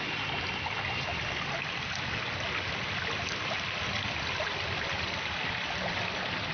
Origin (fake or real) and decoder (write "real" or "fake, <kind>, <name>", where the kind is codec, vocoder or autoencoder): real